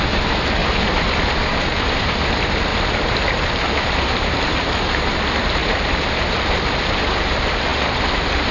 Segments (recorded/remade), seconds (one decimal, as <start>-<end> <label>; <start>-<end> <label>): 0.0-0.6 recorded; 0.6-1.3 remade; 1.3-2.7 recorded; 2.7-5.1 remade; 5.1-5.6 recorded; 5.6-6.6 remade; 6.6-8.5 recorded